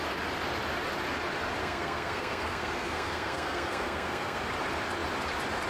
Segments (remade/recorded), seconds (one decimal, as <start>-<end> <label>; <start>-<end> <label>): 0.0-1.6 recorded; 1.6-4.4 remade; 4.4-5.7 recorded